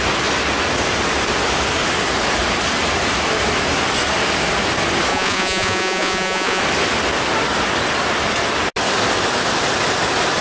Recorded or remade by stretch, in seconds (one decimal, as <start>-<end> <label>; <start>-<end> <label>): 0.0-5.1 recorded; 5.1-6.6 remade; 6.6-10.4 recorded